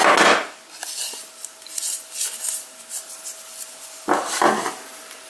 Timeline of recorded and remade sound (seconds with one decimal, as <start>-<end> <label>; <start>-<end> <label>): 0.0-5.3 recorded